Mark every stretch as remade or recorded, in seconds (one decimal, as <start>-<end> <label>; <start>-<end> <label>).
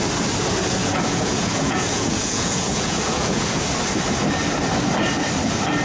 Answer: 0.0-0.8 recorded; 0.8-3.6 remade; 3.6-5.8 recorded